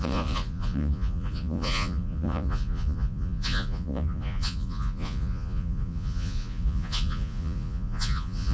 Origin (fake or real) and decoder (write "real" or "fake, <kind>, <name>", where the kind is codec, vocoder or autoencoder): fake, vocoder, Vocos